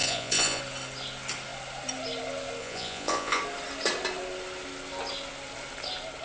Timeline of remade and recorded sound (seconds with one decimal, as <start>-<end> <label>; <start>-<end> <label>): 0.0-0.6 remade; 0.6-2.6 recorded; 2.6-3.4 remade; 3.4-6.2 recorded